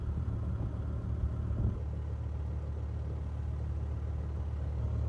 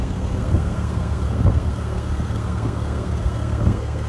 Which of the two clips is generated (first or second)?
second